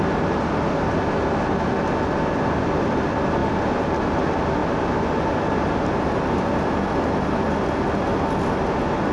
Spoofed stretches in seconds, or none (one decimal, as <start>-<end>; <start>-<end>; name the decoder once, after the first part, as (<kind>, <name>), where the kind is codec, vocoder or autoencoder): none